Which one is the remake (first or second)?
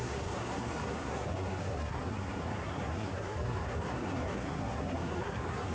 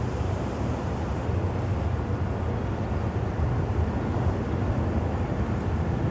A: first